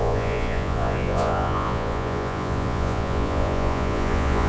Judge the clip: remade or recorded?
remade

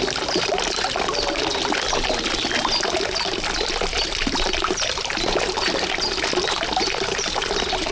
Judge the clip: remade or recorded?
recorded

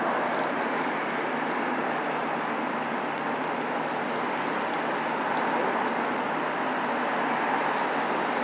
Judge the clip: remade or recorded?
recorded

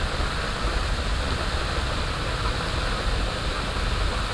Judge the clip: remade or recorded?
recorded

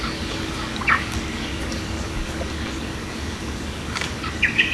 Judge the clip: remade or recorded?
remade